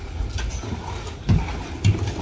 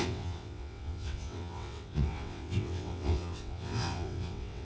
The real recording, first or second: first